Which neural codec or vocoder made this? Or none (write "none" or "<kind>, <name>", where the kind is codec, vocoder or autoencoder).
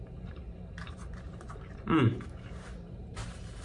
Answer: vocoder, BigVGAN v2